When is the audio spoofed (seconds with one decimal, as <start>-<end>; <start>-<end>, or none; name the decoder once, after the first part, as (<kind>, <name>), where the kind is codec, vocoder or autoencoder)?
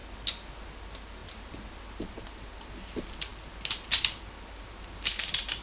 none